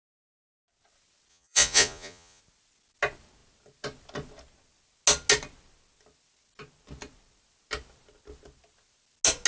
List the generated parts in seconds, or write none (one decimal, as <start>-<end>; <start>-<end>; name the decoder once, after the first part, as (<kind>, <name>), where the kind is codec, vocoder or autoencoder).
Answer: 1.3-2.4 (vocoder, Vocos)